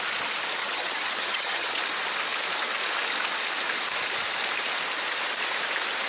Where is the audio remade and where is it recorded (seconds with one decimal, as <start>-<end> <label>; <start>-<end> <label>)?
0.0-0.6 recorded; 0.6-1.8 remade; 1.8-6.1 recorded